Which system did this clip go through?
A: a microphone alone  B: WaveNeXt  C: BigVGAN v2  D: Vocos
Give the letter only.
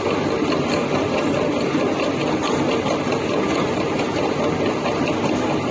A